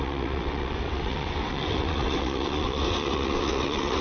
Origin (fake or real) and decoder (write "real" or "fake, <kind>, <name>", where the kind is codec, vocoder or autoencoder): fake, vocoder, WaveNeXt